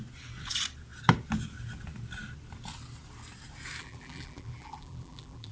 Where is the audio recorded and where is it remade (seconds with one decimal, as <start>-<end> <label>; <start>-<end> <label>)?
0.0-3.8 recorded; 3.8-5.5 remade